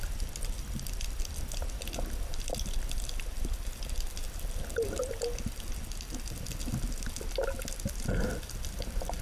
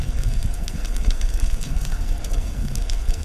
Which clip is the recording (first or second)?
first